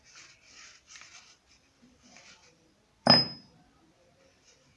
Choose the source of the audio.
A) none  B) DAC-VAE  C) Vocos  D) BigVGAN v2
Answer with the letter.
A